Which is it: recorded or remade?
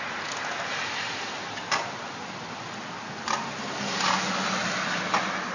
recorded